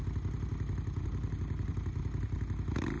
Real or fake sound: real